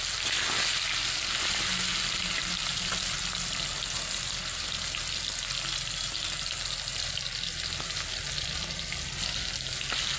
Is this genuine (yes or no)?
yes